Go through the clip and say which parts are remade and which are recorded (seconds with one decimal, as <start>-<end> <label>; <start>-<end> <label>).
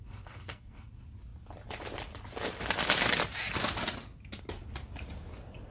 0.0-0.8 remade; 0.8-5.7 recorded